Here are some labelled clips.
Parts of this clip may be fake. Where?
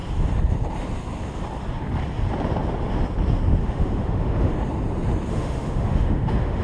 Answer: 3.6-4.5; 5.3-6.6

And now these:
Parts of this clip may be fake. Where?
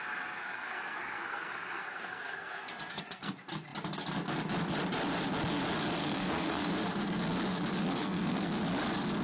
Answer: 0.4-3.3; 6.0-6.7; 7.8-8.5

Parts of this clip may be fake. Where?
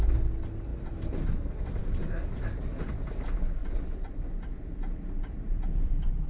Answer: none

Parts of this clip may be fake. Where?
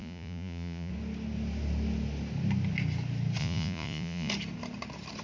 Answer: 0.0-0.9; 3.4-4.3